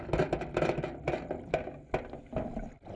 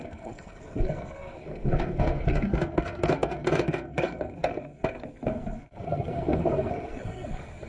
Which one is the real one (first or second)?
first